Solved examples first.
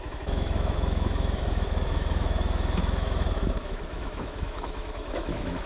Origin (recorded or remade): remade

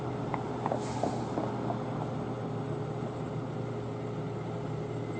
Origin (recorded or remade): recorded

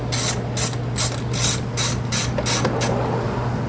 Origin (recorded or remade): recorded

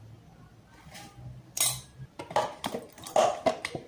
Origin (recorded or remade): recorded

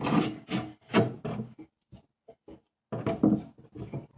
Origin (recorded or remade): recorded